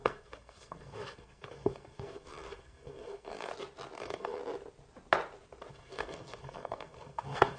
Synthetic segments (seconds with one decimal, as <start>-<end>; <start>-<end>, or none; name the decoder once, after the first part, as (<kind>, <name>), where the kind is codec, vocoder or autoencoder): 0.0-3.5 (codec, SNAC); 4.0-4.4; 5.7-7.6